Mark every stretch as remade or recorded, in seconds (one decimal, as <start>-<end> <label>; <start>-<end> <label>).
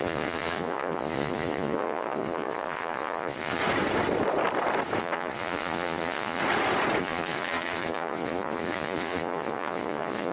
0.0-3.6 remade; 3.6-5.0 recorded; 5.0-6.4 remade; 6.4-7.0 recorded; 7.0-10.3 remade